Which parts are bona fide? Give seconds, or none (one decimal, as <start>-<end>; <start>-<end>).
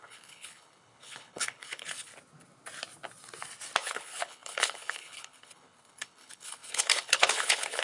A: 2.1-3.8